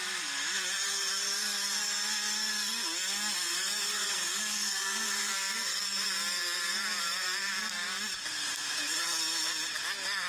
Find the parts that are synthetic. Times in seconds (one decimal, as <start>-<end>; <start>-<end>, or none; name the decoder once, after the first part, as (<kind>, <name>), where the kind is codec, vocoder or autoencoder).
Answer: 3.9-5.8 (codec, SNAC)